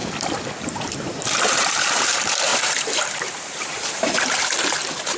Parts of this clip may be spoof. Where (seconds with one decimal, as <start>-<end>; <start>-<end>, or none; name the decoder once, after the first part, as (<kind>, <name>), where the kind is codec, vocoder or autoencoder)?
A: 0.6-5.2 (vocoder, BigVGAN v2)